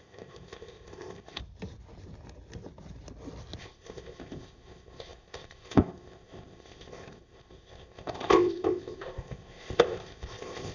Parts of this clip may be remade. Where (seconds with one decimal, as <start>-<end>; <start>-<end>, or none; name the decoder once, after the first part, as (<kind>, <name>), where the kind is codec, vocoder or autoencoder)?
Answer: 0.0-1.4 (codec, ZipCodec); 3.6-10.7